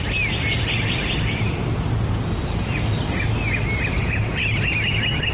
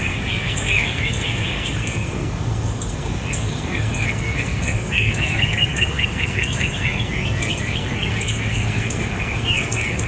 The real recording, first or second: first